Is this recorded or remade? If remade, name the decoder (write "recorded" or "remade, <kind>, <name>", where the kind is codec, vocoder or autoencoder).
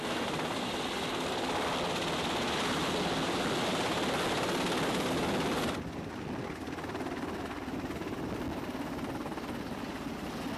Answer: recorded